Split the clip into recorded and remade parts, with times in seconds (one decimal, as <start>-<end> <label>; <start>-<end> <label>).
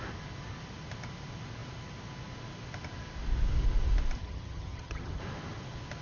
0.0-4.2 recorded; 4.2-5.2 remade; 5.2-6.0 recorded